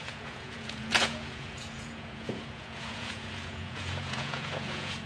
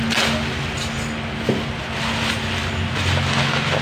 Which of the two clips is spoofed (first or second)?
first